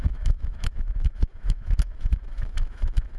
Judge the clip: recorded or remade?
remade